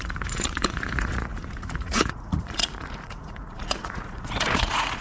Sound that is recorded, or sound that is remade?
remade